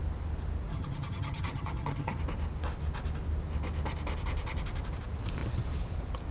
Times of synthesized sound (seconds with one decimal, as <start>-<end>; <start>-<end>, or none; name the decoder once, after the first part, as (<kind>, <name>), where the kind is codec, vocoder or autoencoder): 0.7-2.2 (vocoder, HiFi-GAN)